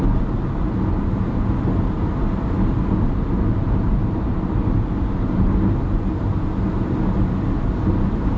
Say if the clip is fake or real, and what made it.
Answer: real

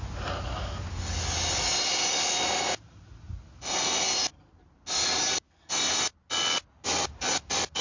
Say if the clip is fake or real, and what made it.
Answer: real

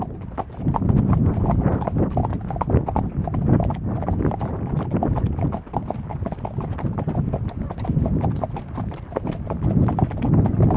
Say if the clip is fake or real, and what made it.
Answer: real